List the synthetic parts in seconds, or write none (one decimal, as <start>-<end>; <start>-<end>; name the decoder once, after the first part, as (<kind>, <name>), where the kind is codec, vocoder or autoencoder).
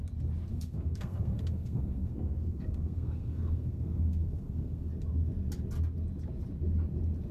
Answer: 0.5-4.9 (codec, SNAC)